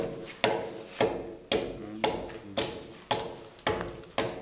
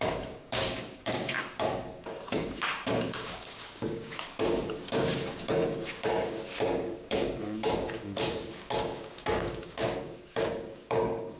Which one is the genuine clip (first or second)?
first